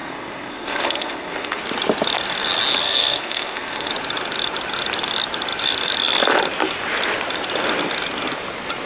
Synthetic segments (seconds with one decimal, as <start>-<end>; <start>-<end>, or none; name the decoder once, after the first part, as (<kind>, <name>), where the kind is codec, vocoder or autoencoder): 0.0-1.6 (codec, SNAC); 2.8-3.9